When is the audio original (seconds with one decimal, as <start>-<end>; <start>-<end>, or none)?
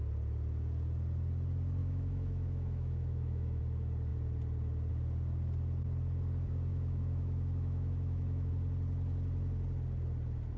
0.0-1.8; 3.6-6.7; 8.5-10.6